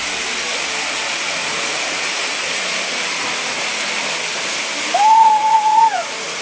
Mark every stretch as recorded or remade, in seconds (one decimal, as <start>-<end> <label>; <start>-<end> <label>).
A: 0.0-1.4 recorded; 1.4-2.8 remade; 2.8-5.1 recorded; 5.1-6.4 remade